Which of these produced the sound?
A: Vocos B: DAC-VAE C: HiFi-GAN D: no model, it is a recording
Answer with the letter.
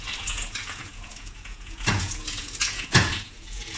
A